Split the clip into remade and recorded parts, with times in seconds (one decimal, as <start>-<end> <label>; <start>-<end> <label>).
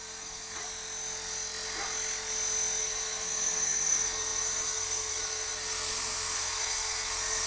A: 0.0-0.6 remade; 0.6-2.8 recorded; 2.8-7.5 remade